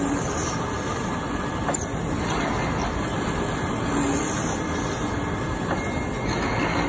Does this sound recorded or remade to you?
recorded